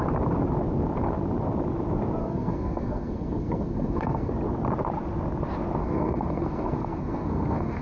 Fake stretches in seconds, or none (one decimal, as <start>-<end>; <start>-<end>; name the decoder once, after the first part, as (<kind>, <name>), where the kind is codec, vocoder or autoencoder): 2.2-4.3 (codec, SNAC); 5.8-7.8